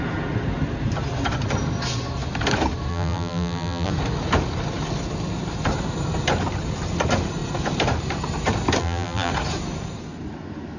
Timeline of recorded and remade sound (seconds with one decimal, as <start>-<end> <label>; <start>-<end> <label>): 0.0-2.9 recorded; 2.9-3.9 remade; 3.9-8.8 recorded; 8.8-9.3 remade; 9.3-10.8 recorded

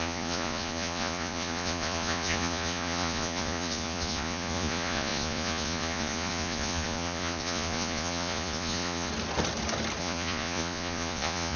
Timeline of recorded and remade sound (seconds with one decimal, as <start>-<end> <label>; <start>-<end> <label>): 0.0-9.1 remade; 9.1-10.0 recorded; 10.0-11.6 remade